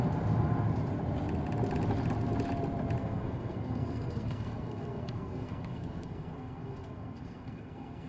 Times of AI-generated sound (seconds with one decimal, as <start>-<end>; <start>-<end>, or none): 3.0-8.1